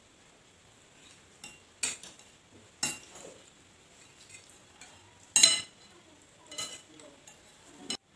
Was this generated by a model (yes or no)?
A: no